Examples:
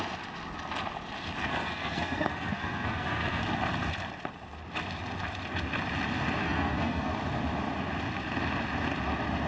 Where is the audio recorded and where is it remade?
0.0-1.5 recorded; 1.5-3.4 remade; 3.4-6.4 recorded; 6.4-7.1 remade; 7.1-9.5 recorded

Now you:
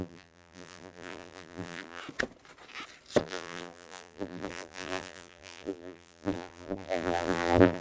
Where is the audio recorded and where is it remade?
0.0-2.0 remade; 2.0-3.2 recorded; 3.2-7.8 remade

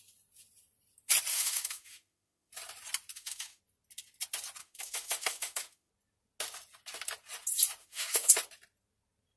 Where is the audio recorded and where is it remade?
0.0-1.3 recorded; 1.3-2.5 remade; 2.5-3.1 recorded; 3.1-3.6 remade; 3.6-4.6 recorded; 4.6-5.9 remade; 5.9-7.8 recorded; 7.8-8.3 remade; 8.3-9.4 recorded

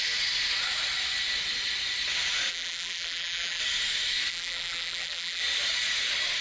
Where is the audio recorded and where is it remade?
0.0-2.5 recorded; 2.5-3.6 remade; 3.6-4.3 recorded; 4.3-5.4 remade; 5.4-6.4 recorded

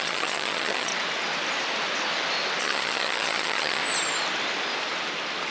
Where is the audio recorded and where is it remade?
0.0-0.9 remade; 0.9-2.6 recorded; 2.6-3.8 remade; 3.8-5.5 recorded

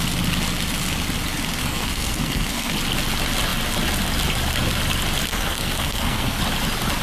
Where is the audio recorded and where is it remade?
0.0-1.6 recorded; 1.6-2.7 remade; 2.7-5.3 recorded; 5.3-6.4 remade; 6.4-7.0 recorded